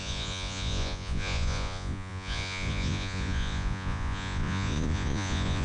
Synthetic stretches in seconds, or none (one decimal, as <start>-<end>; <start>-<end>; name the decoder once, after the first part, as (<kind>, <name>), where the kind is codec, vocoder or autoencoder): 0.0-5.6 (vocoder, Vocos)